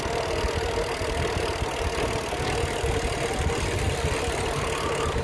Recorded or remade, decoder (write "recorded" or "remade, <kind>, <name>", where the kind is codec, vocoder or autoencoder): recorded